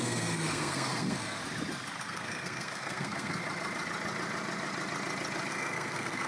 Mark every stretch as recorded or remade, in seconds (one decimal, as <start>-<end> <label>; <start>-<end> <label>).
0.0-1.4 remade; 1.4-2.0 recorded; 2.0-3.4 remade; 3.4-5.5 recorded; 5.5-6.3 remade